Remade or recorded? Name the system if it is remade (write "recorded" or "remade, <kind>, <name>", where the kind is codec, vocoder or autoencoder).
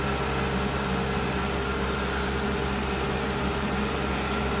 recorded